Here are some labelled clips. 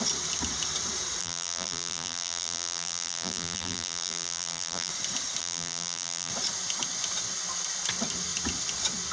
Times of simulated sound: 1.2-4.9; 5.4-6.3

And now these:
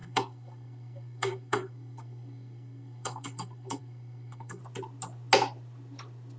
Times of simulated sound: 0.0-4.6

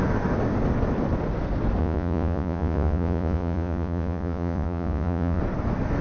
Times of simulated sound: 1.8-5.4

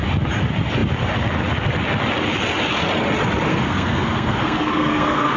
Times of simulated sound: 3.5-5.4

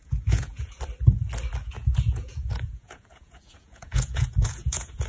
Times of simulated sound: 0.0-0.8; 1.6-5.1

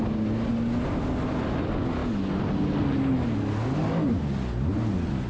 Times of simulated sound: none